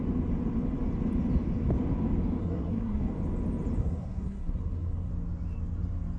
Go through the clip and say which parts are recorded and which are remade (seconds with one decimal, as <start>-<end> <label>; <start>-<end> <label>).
0.0-2.4 recorded; 2.4-3.1 remade; 3.1-3.8 recorded; 3.8-5.1 remade; 5.1-6.2 recorded